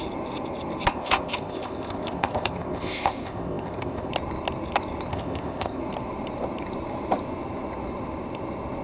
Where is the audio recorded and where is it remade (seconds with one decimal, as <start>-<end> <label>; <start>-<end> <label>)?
0.0-0.9 recorded; 0.9-4.1 remade; 4.1-5.1 recorded; 5.1-5.8 remade; 5.8-8.8 recorded